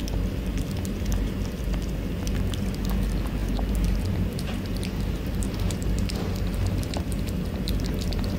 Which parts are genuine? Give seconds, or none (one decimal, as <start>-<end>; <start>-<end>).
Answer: 0.0-3.4